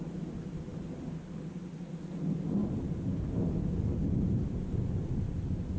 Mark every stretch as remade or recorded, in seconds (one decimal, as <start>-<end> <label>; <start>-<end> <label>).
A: 0.0-5.8 recorded